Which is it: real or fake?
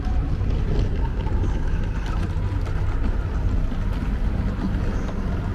real